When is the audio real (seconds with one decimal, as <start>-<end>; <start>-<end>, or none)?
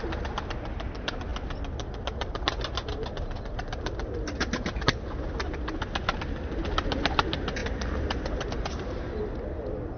0.0-10.0